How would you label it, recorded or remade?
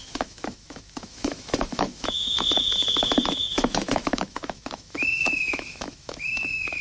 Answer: remade